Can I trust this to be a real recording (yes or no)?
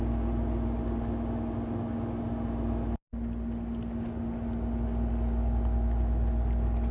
yes